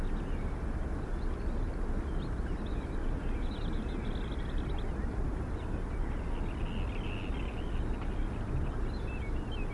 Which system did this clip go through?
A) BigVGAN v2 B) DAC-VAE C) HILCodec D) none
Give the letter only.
D